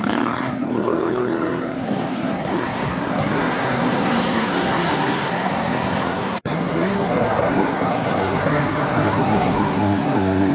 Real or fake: fake